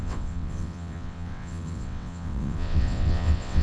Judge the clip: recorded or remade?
remade